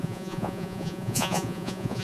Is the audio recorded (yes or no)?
no